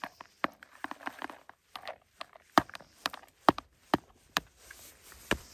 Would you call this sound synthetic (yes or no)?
yes